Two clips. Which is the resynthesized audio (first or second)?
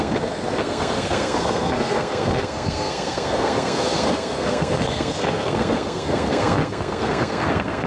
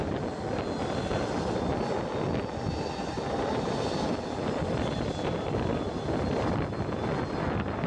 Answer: first